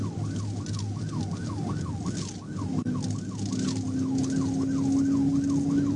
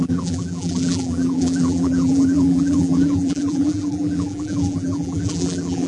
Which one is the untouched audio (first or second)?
first